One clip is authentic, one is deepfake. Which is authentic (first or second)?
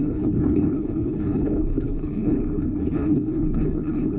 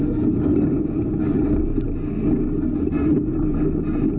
second